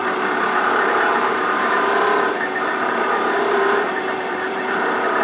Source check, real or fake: fake